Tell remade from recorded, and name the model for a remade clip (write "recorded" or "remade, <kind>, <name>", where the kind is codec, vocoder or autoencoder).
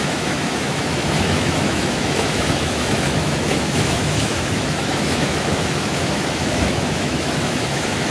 remade, autoencoder, DAC-VAE